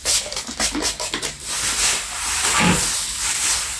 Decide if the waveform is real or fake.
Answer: real